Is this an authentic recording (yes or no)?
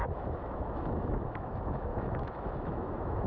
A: no